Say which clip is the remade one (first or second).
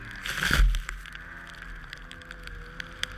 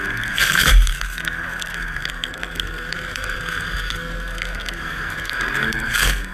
second